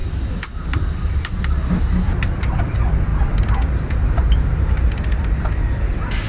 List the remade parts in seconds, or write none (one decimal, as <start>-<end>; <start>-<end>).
0.0-6.3